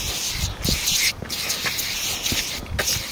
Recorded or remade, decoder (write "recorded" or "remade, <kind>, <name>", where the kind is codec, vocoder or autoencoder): recorded